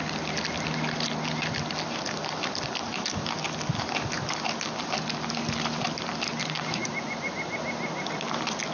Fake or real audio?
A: real